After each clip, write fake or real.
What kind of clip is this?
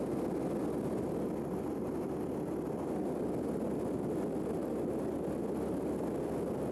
real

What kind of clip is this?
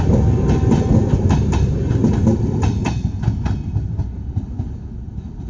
real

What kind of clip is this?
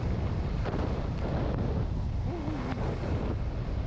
real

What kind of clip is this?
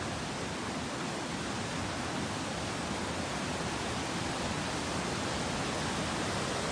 real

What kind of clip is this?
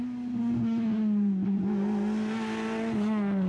real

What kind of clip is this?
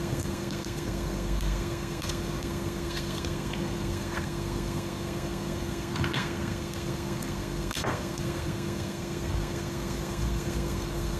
fake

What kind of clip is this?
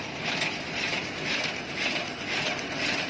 real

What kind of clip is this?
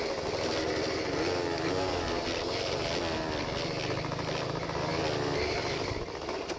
real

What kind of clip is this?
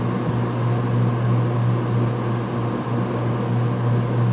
real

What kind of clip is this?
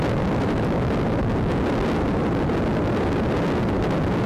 real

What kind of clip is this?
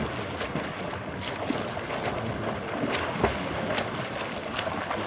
real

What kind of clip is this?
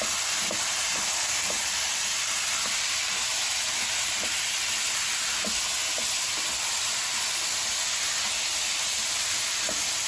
real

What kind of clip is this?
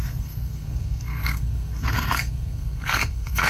fake